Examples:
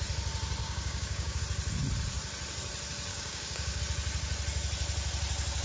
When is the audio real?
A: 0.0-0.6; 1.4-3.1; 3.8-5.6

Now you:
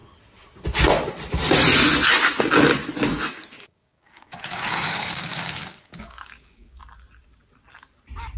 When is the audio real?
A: 0.0-3.1; 6.8-8.4

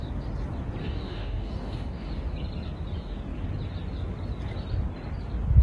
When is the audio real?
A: 0.0-0.8; 2.1-5.6

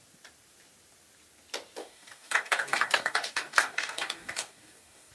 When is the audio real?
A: 0.0-1.8

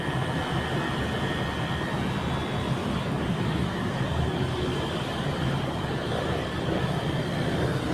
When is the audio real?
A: 0.0-2.8; 7.0-7.9

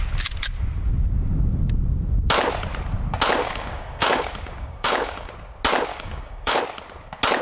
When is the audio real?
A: 0.0-3.4; 5.3-5.9; 6.6-7.4

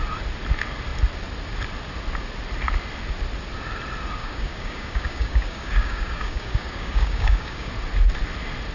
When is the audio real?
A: 0.0-4.2; 7.7-8.7